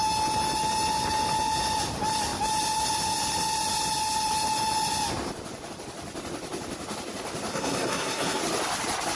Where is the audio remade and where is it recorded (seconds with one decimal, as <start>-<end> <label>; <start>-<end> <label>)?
0.0-7.5 recorded; 7.5-8.4 remade; 8.4-9.2 recorded